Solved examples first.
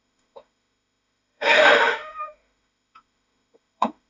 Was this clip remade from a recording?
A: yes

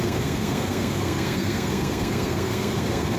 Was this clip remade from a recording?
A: yes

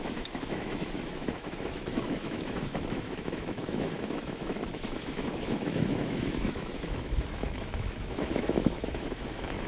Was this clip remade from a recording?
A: yes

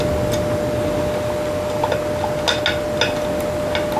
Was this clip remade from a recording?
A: no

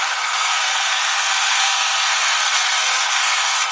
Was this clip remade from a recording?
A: yes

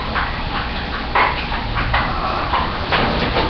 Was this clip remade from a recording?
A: no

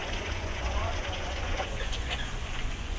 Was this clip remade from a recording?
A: yes